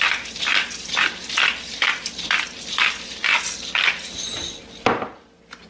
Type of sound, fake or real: real